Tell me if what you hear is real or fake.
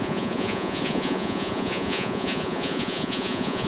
fake